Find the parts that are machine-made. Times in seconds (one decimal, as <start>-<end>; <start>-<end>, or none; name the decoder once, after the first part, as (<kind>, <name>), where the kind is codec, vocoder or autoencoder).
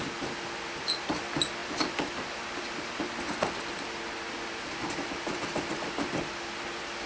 none